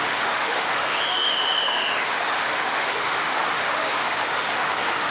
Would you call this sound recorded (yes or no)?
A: no